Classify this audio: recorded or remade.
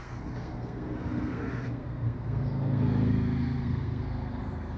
remade